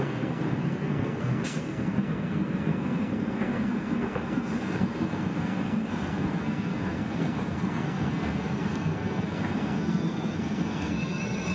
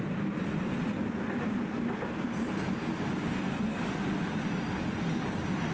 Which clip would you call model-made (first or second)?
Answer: first